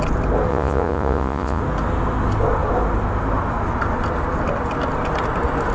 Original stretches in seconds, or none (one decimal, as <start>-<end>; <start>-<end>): 0.0-0.5; 1.6-5.7